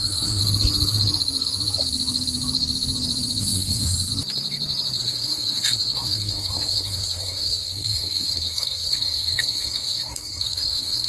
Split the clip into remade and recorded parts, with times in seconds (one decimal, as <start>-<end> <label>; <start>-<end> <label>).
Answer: 0.0-0.4 remade; 0.4-3.4 recorded; 3.4-4.1 remade; 4.1-5.0 recorded; 5.0-11.1 remade